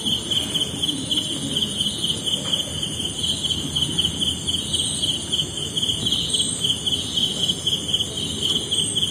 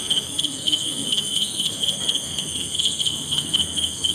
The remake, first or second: second